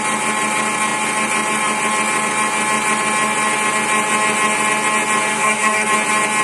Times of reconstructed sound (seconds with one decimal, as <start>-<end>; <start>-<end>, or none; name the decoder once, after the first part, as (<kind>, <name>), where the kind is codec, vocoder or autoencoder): 5.3-5.9 (codec, SNAC)